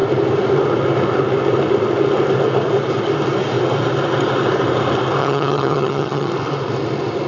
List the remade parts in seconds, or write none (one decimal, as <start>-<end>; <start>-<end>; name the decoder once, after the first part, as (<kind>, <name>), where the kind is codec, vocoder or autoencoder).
5.2-6.3 (vocoder, HiFi-GAN)